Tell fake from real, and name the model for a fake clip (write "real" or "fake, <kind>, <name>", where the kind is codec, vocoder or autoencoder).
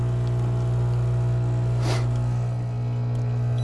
real